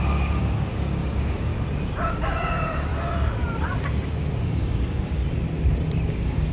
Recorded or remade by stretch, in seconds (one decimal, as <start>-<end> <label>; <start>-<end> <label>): 0.0-1.5 remade; 1.5-2.1 recorded; 2.1-2.9 remade; 2.9-4.4 recorded; 4.4-5.2 remade; 5.2-6.1 recorded; 6.1-6.5 remade